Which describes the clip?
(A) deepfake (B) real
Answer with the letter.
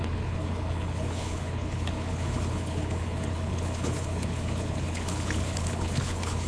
A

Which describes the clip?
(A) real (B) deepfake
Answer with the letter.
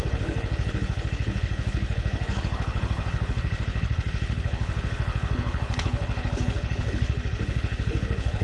B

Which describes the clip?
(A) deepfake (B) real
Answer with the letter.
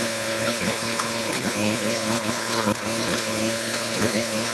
A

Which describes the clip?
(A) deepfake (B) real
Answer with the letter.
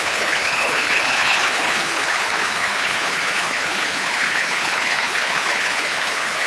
A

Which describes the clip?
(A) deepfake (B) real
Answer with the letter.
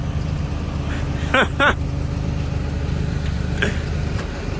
B